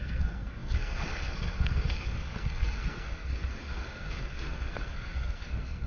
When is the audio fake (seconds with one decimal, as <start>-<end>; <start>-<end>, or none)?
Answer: 0.0-5.9